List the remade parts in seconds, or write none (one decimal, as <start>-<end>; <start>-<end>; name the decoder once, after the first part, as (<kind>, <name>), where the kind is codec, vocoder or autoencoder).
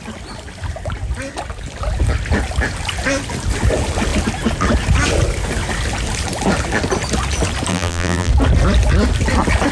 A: 7.7-8.3 (vocoder, BigVGAN v2)